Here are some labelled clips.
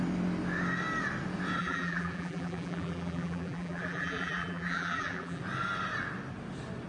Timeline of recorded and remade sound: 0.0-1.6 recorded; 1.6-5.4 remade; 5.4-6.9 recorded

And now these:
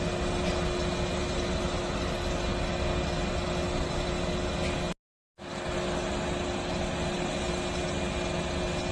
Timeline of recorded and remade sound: 0.0-8.9 recorded

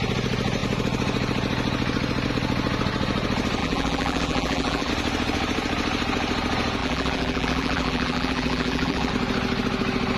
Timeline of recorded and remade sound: 0.0-3.6 recorded; 3.6-4.9 remade; 4.9-6.8 recorded; 6.8-9.1 remade; 9.1-10.2 recorded

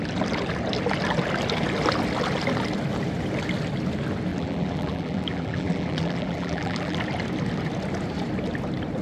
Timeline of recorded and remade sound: 0.0-4.3 recorded; 4.3-7.0 remade; 7.0-9.0 recorded

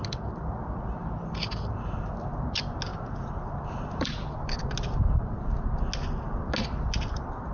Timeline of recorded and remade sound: 0.0-2.9 recorded; 2.9-4.6 remade; 4.6-7.5 recorded